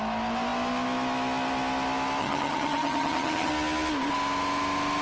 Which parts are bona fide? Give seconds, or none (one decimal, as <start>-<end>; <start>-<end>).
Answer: 0.0-2.2; 3.5-5.0